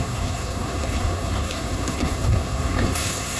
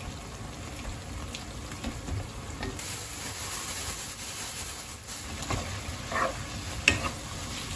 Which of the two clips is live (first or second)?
second